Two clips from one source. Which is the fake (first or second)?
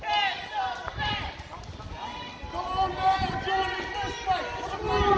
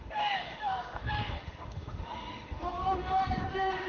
second